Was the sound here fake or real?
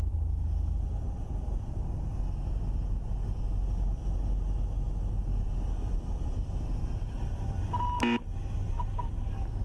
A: real